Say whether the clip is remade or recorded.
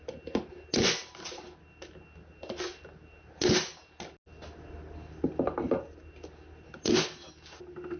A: recorded